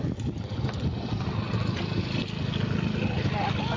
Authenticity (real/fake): real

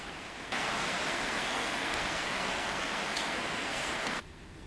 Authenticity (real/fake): fake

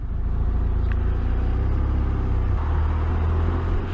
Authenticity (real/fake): real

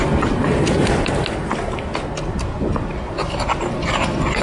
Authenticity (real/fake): real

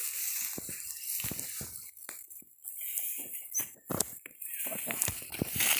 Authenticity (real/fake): real